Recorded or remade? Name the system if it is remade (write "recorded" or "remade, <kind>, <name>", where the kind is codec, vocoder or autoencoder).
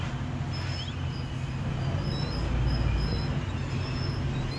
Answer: recorded